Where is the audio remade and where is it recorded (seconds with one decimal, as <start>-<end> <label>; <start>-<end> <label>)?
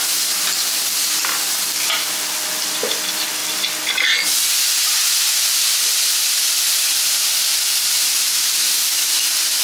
0.0-9.6 recorded